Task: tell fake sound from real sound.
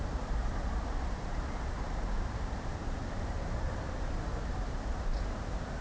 fake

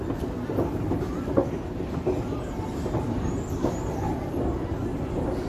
real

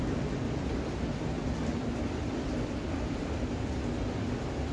real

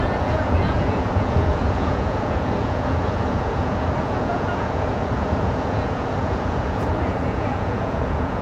fake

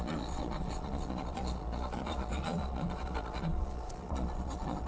fake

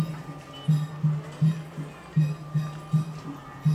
real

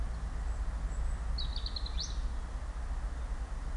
real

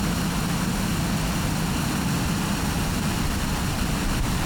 real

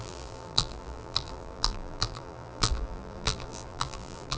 fake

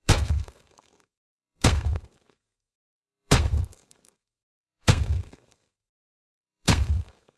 fake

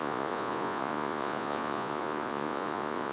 fake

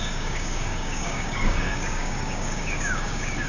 fake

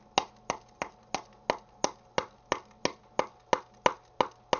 real